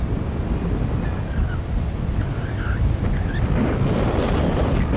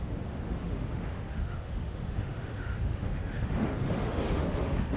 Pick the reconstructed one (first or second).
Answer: second